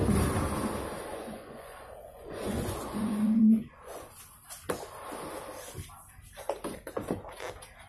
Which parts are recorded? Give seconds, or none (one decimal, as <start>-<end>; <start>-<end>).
0.0-1.1; 4.0-7.9